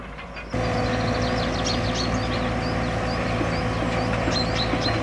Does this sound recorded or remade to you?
recorded